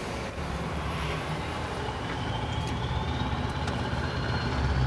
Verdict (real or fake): fake